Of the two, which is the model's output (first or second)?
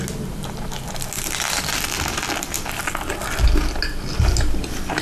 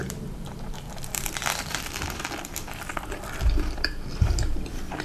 second